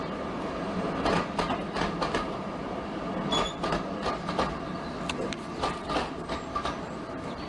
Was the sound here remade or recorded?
recorded